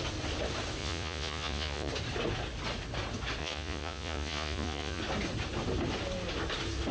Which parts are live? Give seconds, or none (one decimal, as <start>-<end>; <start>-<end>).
0.0-0.8; 1.9-3.4; 5.0-6.9